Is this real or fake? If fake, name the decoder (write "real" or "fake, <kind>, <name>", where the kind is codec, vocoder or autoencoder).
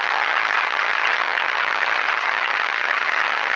fake, vocoder, HiFi-GAN